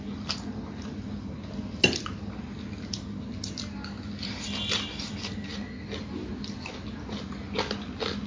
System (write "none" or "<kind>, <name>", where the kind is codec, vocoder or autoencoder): none